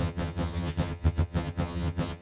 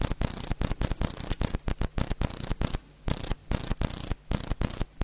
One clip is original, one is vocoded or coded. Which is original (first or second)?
second